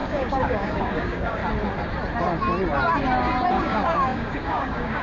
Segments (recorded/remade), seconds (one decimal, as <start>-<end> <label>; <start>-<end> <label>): 0.0-1.4 remade; 1.4-3.5 recorded; 3.5-5.0 remade